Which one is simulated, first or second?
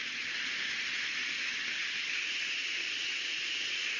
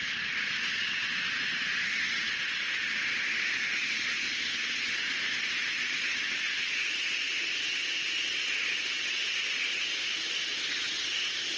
first